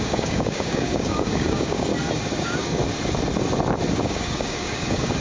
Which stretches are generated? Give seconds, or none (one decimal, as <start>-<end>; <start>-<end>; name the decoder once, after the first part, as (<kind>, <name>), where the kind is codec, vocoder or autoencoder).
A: 0.0-1.9 (codec, DAC); 2.4-2.8; 4.0-5.2